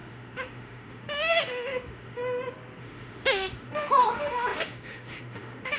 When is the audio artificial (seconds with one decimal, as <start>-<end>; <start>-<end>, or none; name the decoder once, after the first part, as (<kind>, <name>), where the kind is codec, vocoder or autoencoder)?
0.0-2.2 (autoencoder, DAC-VAE); 2.8-5.8